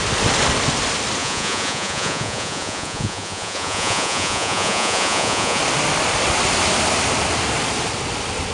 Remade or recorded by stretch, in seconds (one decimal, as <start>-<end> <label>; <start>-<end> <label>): 0.0-1.2 recorded; 1.2-5.6 remade; 5.6-8.5 recorded